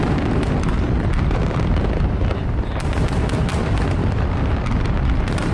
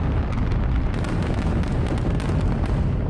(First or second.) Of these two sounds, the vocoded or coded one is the first